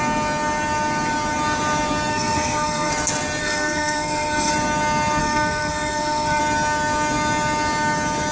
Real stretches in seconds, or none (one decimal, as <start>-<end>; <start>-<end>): 0.0-2.1; 2.9-3.4; 4.5-5.2; 6.4-8.3